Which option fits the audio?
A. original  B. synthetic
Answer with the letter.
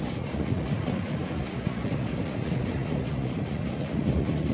B